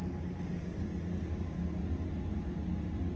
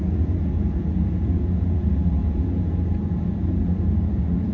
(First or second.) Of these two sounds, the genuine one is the first